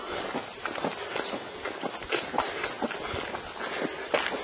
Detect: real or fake real